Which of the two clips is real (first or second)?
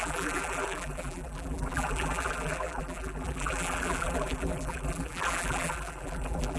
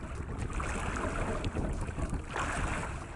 second